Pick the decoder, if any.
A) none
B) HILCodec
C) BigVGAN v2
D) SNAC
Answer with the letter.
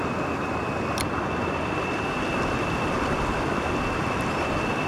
A